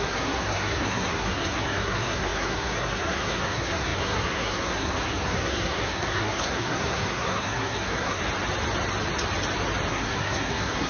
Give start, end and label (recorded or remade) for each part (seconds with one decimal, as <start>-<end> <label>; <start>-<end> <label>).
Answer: 0.0-8.2 remade; 8.2-9.9 recorded; 9.9-10.9 remade